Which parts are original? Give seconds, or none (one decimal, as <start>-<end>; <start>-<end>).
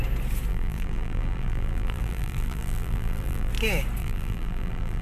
0.0-0.5; 3.5-4.0